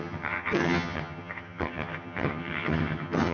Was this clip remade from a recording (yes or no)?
yes